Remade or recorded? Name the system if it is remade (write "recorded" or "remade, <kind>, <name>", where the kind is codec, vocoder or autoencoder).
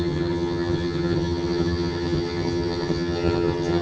remade, vocoder, HiFi-GAN